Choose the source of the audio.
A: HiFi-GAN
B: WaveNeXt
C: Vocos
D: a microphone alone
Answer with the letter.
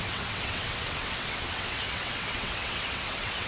B